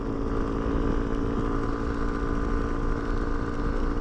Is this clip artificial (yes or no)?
no